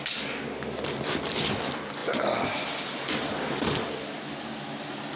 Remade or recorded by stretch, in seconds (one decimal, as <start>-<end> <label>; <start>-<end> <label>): 0.0-5.2 recorded